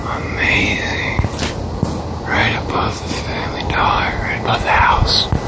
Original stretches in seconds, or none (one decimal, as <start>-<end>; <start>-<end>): 0.0-2.4; 3.2-5.5